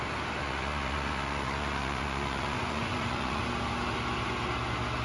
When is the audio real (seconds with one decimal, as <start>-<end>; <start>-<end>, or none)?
0.0-0.4; 3.4-5.0